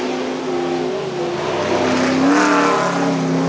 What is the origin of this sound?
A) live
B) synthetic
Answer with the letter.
A